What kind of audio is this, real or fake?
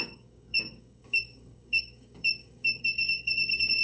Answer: fake